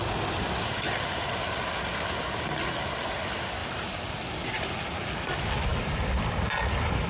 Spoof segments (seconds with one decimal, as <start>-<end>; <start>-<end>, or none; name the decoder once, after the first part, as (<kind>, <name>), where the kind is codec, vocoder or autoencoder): none